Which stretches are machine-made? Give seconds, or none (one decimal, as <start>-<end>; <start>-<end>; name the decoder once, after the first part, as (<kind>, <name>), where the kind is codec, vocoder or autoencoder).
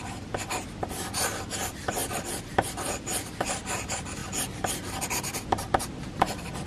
none